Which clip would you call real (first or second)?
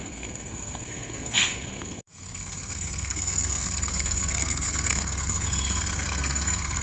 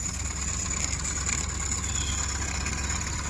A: second